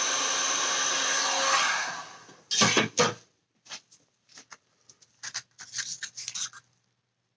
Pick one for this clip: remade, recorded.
recorded